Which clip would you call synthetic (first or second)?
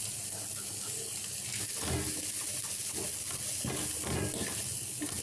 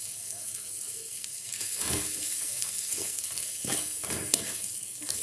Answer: second